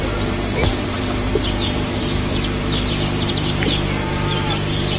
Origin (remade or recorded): remade